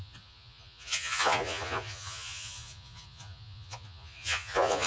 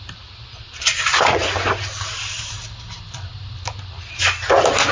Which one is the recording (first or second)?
second